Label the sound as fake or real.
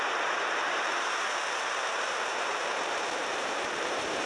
fake